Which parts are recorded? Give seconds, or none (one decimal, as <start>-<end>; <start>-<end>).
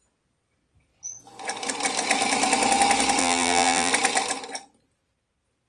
0.0-3.2; 3.9-5.7